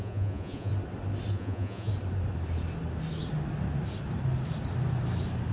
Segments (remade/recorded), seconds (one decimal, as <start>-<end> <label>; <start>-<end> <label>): 0.0-0.7 remade; 0.7-1.3 recorded; 1.3-1.9 remade; 1.9-5.5 recorded